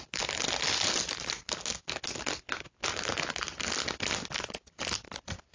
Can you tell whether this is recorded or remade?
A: recorded